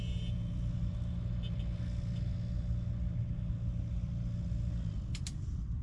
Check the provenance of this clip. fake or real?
real